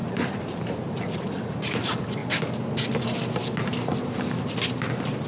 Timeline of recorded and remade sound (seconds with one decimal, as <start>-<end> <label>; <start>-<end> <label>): 0.0-2.2 remade; 2.2-4.4 recorded; 4.4-5.3 remade